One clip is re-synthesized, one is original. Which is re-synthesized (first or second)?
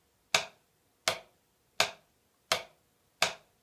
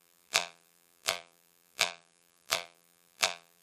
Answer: second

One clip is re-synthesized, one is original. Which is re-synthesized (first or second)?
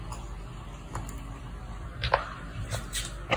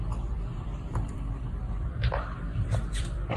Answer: second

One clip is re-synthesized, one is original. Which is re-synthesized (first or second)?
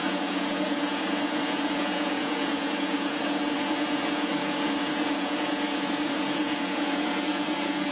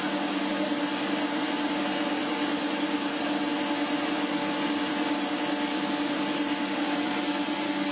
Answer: first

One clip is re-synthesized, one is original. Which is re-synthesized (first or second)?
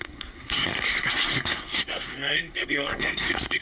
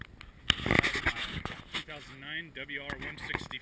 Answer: first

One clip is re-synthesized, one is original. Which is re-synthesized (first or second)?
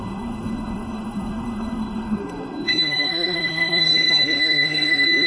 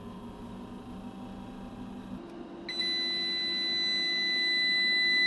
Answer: first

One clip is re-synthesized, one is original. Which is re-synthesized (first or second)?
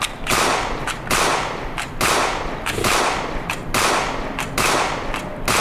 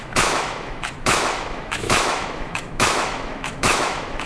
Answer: second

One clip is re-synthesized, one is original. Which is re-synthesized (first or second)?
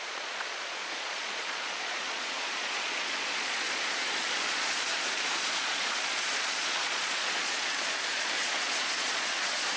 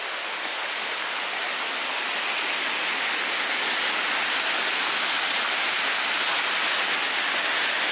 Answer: first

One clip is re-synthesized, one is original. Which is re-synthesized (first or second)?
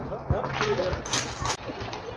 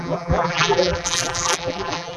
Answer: second